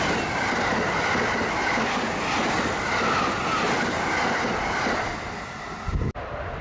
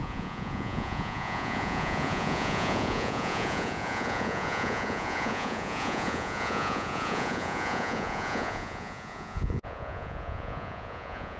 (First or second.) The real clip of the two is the first